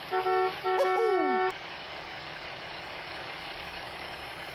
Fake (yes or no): yes